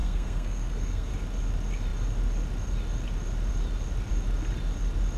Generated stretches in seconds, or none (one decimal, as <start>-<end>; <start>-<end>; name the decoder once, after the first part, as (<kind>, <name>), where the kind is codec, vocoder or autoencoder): 0.0-1.1 (codec, SNAC)